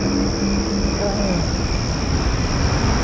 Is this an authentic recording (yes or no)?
yes